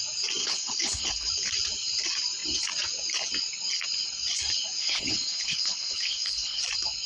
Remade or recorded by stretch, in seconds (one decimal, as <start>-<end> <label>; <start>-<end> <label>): 0.0-0.4 recorded; 0.4-1.3 remade; 1.3-4.8 recorded; 4.8-6.6 remade; 6.6-7.1 recorded